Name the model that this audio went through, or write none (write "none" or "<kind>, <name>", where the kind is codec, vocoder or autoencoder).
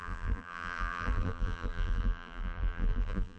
vocoder, BigVGAN v2